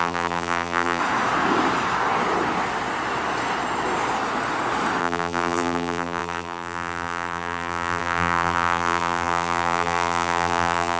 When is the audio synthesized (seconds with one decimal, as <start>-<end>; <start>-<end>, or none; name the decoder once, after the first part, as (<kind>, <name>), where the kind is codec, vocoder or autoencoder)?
0.0-1.0 (vocoder, BigVGAN v2); 5.0-11.0